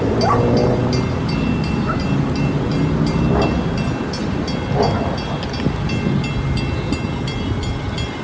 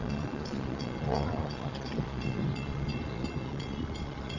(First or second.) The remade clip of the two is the second